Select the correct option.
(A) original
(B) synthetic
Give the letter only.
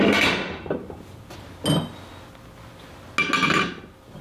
A